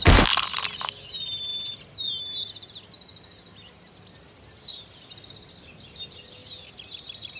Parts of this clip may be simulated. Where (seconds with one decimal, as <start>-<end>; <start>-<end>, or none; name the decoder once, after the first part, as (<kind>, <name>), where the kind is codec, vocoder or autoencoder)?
none